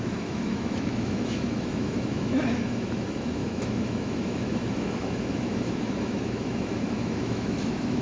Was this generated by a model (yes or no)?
yes